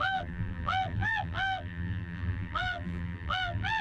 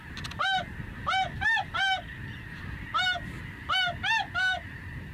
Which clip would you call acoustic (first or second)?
second